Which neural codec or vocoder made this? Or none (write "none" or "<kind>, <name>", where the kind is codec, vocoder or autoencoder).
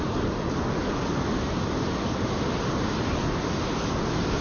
none